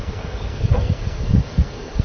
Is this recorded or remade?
remade